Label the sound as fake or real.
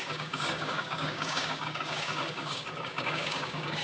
fake